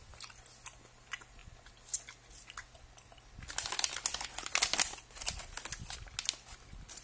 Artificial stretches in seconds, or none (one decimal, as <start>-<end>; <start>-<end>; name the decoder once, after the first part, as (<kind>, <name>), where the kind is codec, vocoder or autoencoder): none